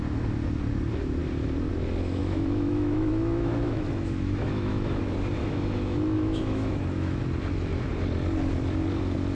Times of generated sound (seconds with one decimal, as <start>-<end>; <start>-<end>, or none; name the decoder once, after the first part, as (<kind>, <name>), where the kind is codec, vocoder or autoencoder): 2.2-5.0 (autoencoder, DAC-VAE); 5.4-7.2